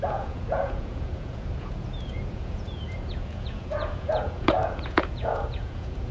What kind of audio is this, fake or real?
fake